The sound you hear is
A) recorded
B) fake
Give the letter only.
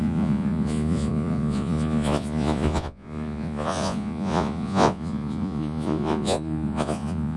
B